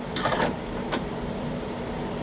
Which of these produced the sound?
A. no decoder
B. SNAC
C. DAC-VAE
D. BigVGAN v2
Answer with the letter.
D